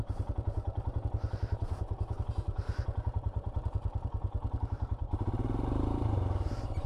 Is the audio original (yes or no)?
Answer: no